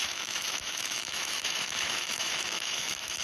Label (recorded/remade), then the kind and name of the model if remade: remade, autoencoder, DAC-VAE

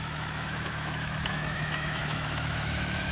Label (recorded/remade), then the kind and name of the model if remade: remade, autoencoder, DAC-VAE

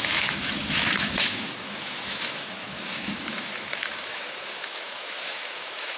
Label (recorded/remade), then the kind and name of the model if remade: remade, autoencoder, DAC-VAE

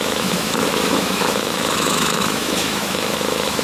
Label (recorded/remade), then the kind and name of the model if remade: remade, autoencoder, DAC-VAE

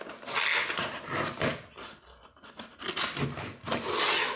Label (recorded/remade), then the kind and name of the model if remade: recorded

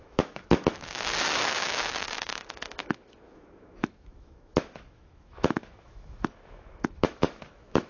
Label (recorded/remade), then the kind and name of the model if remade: remade, autoencoder, DAC-VAE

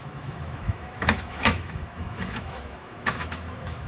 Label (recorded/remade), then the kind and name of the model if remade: remade, autoencoder, DAC-VAE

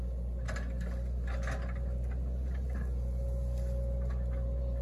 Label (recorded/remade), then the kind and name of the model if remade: recorded